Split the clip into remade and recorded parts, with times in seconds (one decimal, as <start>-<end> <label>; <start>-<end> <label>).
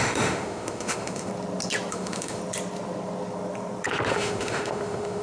0.0-1.3 remade; 1.3-1.9 recorded; 1.9-2.4 remade; 2.4-4.1 recorded; 4.1-5.2 remade